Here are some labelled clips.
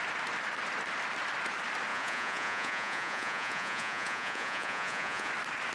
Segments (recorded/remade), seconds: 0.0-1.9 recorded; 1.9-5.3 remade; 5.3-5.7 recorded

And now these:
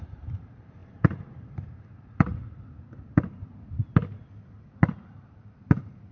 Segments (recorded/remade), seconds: 0.0-2.3 remade; 2.3-5.1 recorded; 5.1-6.1 remade

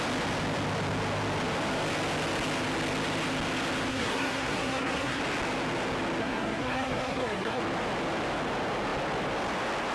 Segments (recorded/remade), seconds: 0.0-3.9 recorded; 3.9-5.2 remade; 5.2-6.2 recorded; 6.2-7.6 remade; 7.6-9.9 recorded

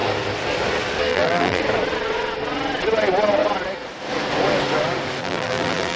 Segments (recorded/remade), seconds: 0.0-1.1 recorded; 1.1-1.6 remade; 1.6-5.2 recorded; 5.2-6.0 remade

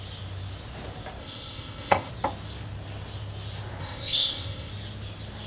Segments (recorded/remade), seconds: 0.0-1.2 recorded; 1.2-2.1 remade; 2.1-3.8 recorded; 3.8-4.7 remade; 4.7-5.5 recorded